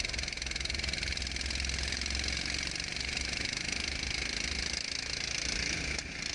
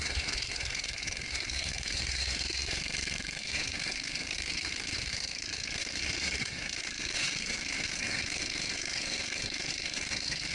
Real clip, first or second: first